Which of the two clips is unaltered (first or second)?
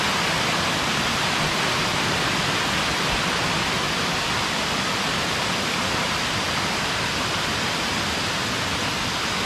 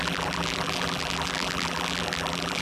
first